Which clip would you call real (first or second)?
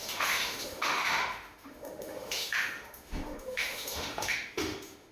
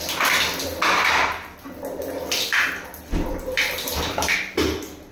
second